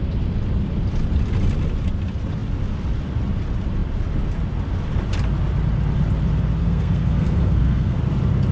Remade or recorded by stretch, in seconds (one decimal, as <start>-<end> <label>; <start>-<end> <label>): 0.0-6.6 recorded; 6.6-8.0 remade; 8.0-8.5 recorded